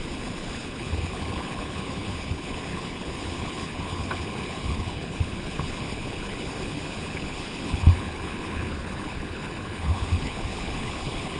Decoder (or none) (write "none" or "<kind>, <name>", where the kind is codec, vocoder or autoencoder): codec, HILCodec